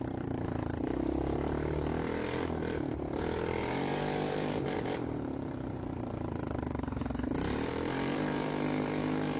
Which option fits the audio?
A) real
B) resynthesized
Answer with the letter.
B